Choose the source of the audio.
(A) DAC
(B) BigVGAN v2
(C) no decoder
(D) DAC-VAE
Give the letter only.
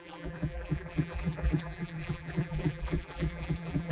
B